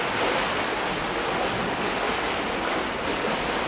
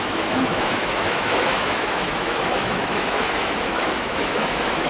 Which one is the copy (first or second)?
second